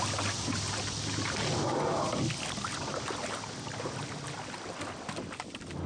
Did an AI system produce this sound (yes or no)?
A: no